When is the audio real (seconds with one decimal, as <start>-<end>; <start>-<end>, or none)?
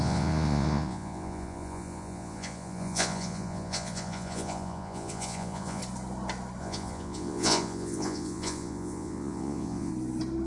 5.8-6.6; 9.9-10.5